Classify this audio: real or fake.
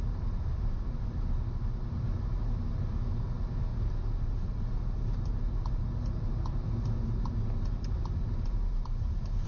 real